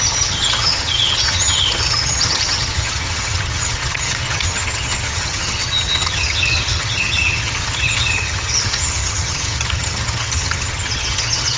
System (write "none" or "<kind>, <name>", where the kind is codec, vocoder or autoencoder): vocoder, HiFi-GAN